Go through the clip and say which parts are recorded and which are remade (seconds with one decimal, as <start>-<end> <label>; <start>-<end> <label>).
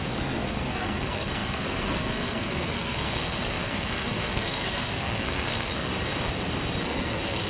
0.0-5.9 remade; 5.9-6.8 recorded; 6.8-7.5 remade